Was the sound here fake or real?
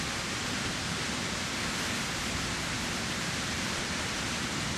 fake